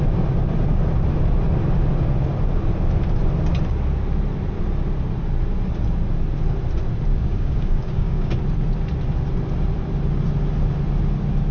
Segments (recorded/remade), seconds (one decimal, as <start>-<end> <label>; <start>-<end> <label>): 0.0-7.1 recorded; 7.1-8.3 remade; 8.3-11.5 recorded